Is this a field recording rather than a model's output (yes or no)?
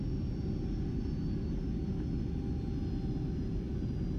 yes